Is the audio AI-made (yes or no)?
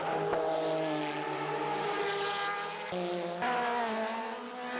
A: no